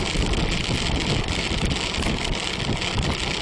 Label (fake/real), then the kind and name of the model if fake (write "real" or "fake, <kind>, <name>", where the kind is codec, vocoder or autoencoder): real